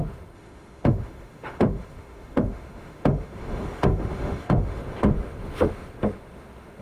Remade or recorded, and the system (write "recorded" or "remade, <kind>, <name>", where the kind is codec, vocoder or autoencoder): remade, autoencoder, DAC-VAE